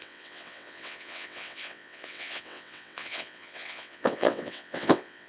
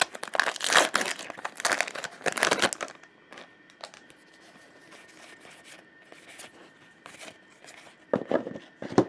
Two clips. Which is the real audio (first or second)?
second